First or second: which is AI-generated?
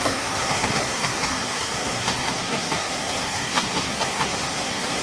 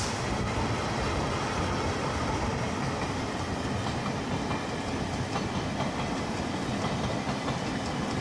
first